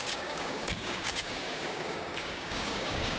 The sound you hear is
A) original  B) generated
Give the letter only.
B